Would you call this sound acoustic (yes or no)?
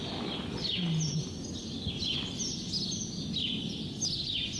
yes